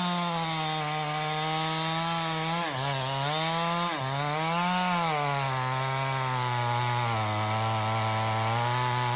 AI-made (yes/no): no